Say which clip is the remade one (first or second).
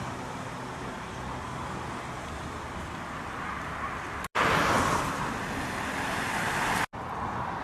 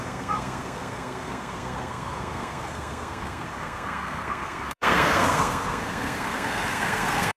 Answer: second